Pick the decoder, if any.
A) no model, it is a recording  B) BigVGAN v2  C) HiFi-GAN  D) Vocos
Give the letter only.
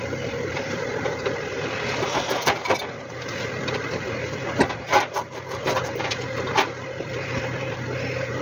B